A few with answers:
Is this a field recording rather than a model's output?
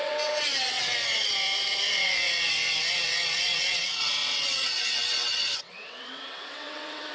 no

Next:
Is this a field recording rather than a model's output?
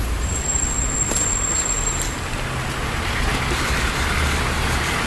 yes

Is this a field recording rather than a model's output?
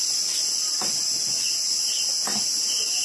yes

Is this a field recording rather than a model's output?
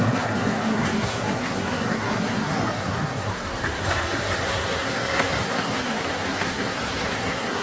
no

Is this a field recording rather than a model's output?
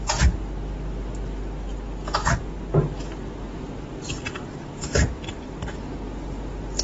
yes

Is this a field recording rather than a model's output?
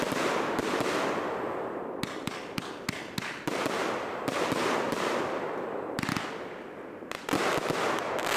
yes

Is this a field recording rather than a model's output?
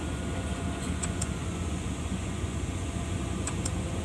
no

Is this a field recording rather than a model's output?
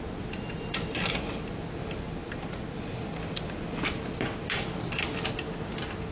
yes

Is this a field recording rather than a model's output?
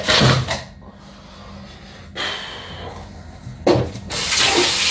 yes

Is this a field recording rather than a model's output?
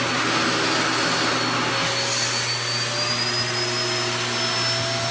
yes